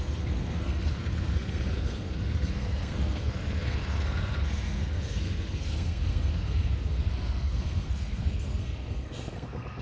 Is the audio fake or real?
fake